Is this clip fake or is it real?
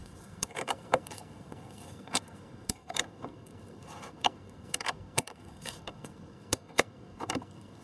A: fake